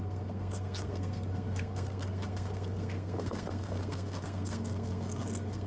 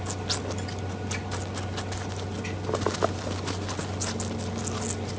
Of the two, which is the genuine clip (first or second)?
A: second